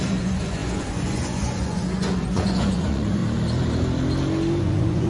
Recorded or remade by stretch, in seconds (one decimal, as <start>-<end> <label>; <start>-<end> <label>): 0.0-3.2 remade; 3.2-4.6 recorded; 4.6-5.1 remade